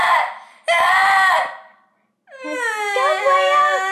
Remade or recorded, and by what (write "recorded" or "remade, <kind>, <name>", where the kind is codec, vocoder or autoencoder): recorded